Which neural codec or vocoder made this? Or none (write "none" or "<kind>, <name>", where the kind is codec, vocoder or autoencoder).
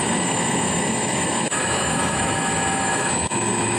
autoencoder, DAC-VAE